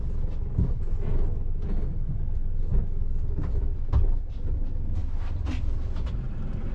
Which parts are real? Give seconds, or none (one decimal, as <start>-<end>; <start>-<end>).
0.0-6.7